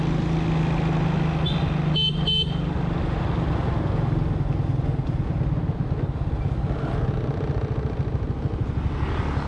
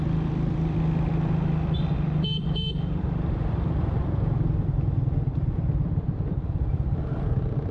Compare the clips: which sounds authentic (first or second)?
first